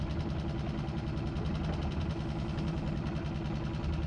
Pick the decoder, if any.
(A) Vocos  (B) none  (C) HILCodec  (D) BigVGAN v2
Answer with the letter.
B